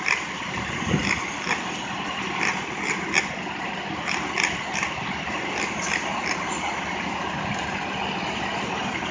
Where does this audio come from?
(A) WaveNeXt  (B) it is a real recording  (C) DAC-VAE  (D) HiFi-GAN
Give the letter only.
B